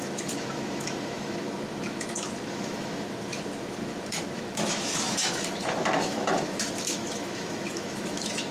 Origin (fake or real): fake